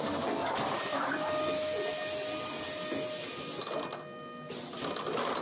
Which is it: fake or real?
real